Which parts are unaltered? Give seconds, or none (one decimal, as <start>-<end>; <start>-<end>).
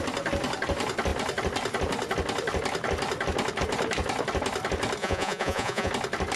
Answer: 0.0-5.0; 5.9-6.4